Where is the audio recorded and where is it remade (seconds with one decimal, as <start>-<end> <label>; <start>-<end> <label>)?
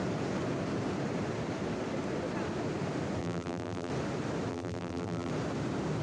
0.0-3.2 recorded; 3.2-3.9 remade; 3.9-4.5 recorded; 4.5-5.3 remade; 5.3-6.0 recorded